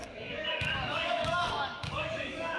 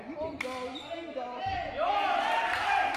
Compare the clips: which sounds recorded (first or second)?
second